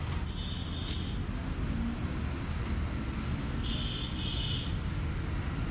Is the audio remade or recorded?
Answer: recorded